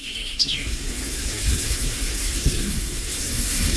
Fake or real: fake